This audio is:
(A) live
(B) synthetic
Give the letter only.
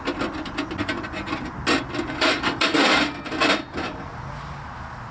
A